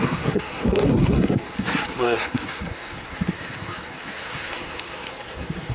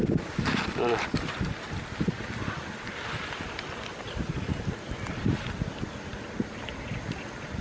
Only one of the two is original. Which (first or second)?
second